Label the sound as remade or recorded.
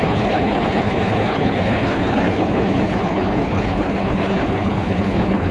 remade